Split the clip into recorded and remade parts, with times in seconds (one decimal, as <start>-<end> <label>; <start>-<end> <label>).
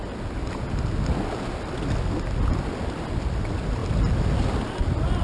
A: 0.0-5.2 recorded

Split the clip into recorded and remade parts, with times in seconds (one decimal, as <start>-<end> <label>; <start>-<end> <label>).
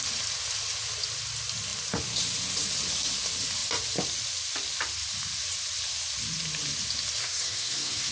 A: 0.0-7.2 recorded; 7.2-8.1 remade